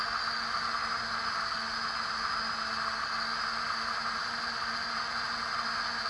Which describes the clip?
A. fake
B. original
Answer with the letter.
B